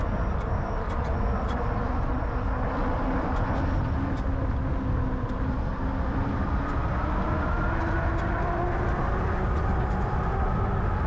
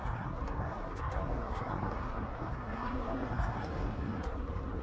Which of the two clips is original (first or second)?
first